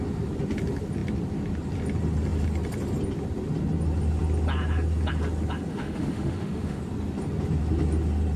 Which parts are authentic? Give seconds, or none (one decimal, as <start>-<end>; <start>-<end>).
0.0-5.7; 6.8-8.4